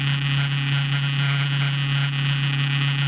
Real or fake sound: real